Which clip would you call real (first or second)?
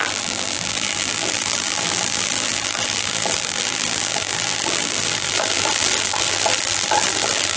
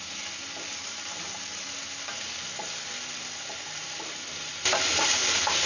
second